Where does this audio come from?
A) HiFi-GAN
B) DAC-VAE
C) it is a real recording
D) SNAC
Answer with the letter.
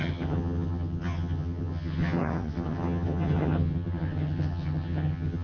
A